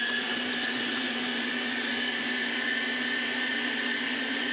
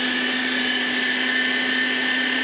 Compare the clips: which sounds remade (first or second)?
first